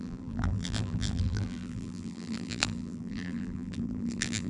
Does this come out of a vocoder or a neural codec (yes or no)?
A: yes